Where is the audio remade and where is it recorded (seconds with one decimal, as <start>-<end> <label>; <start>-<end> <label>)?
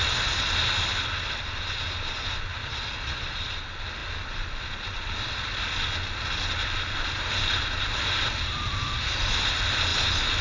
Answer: 0.0-2.6 recorded; 2.6-3.4 remade; 3.4-10.4 recorded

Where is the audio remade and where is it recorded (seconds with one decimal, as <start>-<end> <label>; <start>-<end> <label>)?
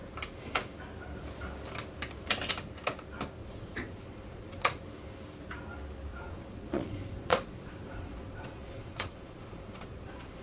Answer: 0.0-3.4 recorded; 3.4-4.8 remade; 4.8-6.1 recorded; 6.1-10.4 remade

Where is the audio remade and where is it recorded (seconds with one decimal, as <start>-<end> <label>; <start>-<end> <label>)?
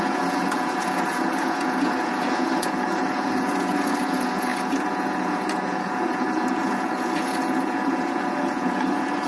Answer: 0.0-9.3 remade